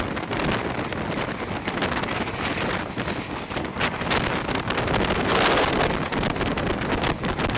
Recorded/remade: recorded